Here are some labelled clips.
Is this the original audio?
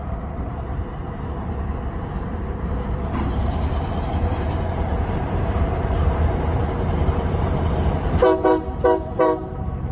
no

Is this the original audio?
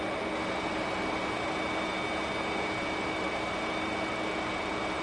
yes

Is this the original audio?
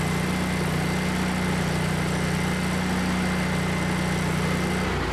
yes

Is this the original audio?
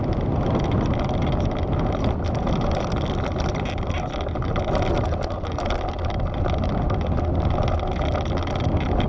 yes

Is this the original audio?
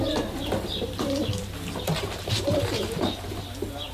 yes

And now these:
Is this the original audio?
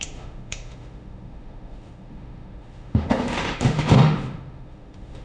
no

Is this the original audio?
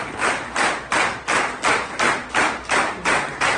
yes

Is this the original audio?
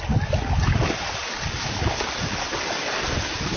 yes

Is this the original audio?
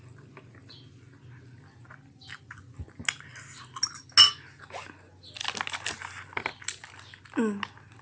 yes